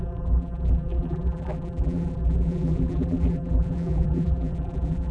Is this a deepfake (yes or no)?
yes